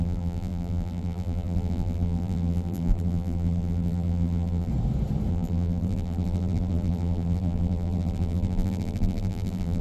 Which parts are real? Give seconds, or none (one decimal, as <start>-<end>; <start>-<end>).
4.7-5.3